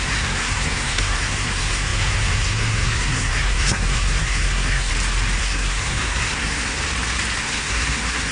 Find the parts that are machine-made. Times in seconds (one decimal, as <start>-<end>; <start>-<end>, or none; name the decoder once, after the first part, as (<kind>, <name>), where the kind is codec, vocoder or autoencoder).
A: 0.0-4.9 (codec, SNAC); 5.4-6.8; 7.4-8.3

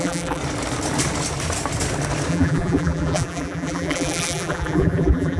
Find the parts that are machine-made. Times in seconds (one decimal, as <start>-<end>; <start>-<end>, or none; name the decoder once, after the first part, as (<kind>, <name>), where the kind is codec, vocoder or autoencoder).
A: 0.0-0.4 (vocoder, BigVGAN v2); 2.3-5.4